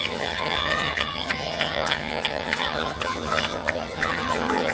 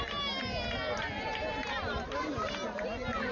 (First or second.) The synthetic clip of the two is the first